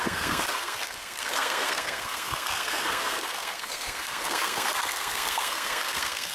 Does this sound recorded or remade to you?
remade